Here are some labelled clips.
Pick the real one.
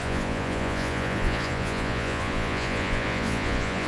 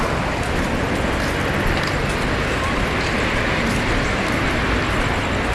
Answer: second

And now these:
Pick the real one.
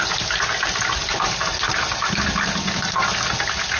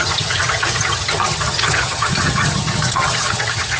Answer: first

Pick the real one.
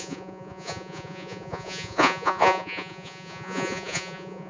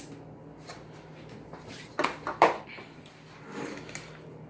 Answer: second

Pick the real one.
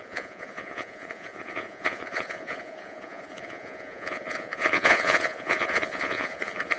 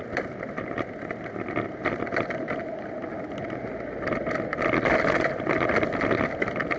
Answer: second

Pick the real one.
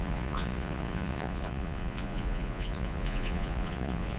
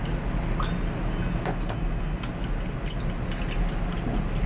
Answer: second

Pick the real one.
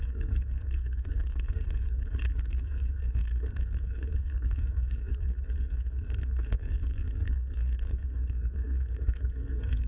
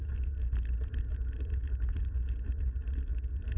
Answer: second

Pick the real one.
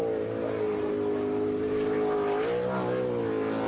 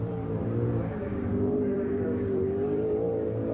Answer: first